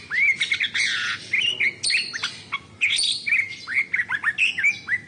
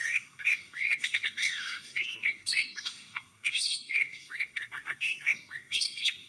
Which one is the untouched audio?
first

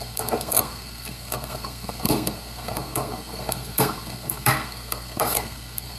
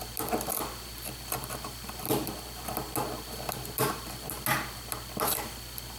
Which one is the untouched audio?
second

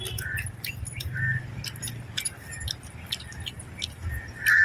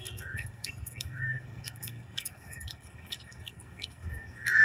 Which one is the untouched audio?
first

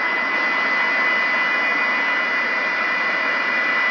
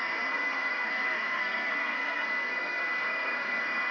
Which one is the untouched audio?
first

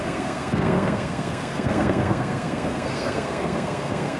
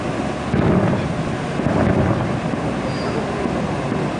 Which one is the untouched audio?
second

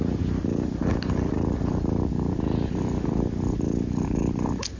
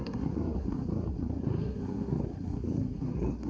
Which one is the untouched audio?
first